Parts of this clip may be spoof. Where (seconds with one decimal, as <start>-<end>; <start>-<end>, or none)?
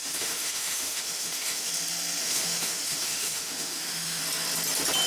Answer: 0.0-1.7; 2.2-4.2